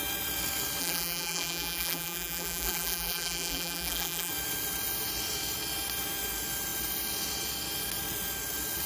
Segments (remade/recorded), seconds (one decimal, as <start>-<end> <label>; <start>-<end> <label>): 0.0-0.8 recorded; 0.8-4.3 remade; 4.3-8.9 recorded